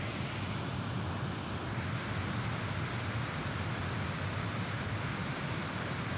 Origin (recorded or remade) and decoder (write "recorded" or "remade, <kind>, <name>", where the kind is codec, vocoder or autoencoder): recorded